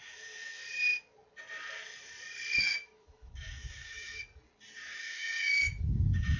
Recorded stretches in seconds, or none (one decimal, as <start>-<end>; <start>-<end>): 0.6-2.6; 4.2-5.0